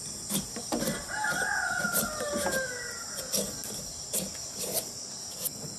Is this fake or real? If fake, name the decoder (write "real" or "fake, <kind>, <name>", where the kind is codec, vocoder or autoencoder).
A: real